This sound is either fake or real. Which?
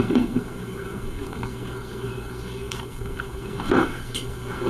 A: fake